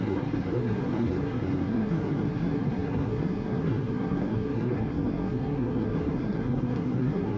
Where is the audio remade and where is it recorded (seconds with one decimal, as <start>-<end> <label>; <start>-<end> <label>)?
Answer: 0.0-7.4 remade